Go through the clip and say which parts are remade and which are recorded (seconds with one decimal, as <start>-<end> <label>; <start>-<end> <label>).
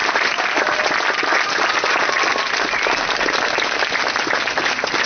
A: 0.0-5.1 recorded